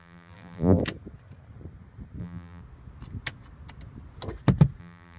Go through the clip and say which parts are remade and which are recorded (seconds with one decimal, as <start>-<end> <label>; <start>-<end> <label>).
0.0-0.8 remade; 0.8-2.2 recorded; 2.2-2.6 remade; 2.6-4.8 recorded; 4.8-5.2 remade